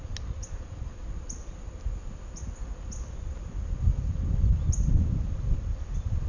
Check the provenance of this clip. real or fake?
real